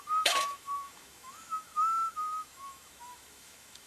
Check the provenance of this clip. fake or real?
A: fake